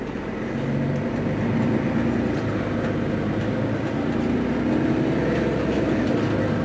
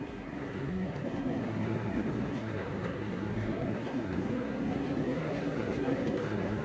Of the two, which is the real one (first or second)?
first